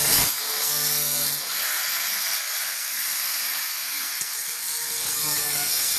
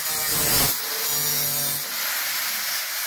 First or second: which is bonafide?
second